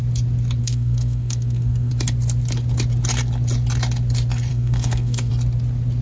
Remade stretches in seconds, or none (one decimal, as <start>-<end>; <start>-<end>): 0.6-1.9; 4.5-5.3